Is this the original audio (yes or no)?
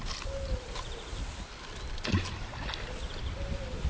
yes